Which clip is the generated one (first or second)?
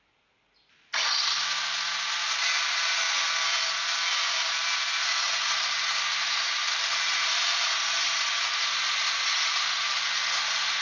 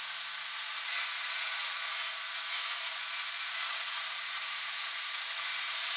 second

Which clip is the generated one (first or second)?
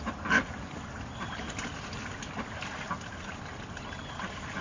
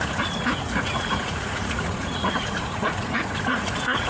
second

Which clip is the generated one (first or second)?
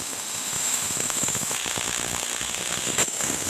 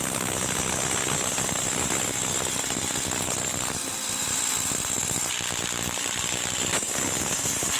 first